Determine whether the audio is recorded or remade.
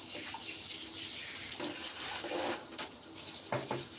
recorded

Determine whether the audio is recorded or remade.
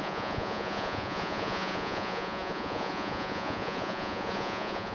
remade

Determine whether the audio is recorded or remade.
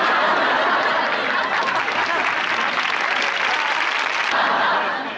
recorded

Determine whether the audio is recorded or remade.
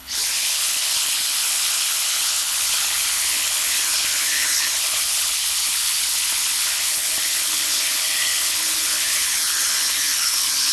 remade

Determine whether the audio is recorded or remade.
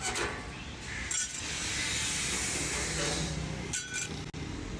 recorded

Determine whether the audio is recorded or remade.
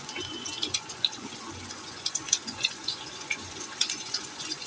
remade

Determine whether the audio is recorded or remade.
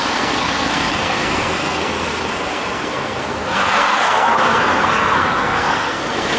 remade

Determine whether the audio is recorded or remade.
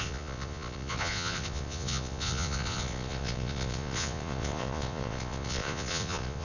remade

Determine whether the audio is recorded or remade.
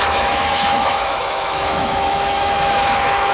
remade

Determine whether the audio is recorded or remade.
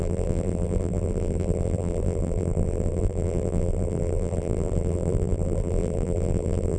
remade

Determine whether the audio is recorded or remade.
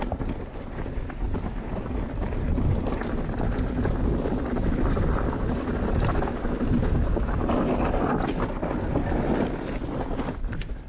recorded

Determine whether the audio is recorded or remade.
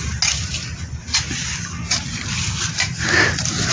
recorded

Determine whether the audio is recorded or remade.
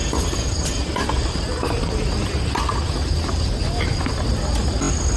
recorded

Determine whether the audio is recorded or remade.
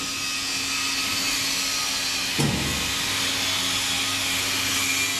recorded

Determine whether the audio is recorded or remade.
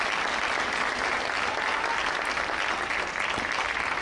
recorded